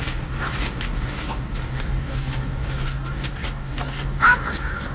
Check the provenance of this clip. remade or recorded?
remade